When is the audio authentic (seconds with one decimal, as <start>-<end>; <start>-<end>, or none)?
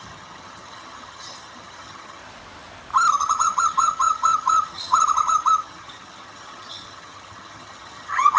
2.2-3.1